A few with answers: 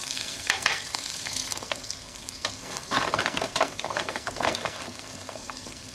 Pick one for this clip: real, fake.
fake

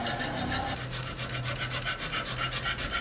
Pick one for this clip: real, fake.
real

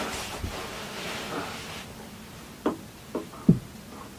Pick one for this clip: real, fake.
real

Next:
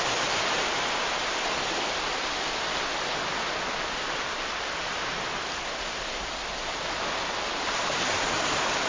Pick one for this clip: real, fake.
real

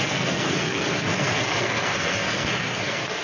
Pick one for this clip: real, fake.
fake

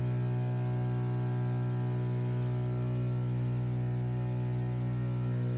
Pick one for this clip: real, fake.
real